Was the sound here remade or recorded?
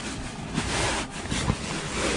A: recorded